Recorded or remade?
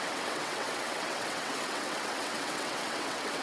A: remade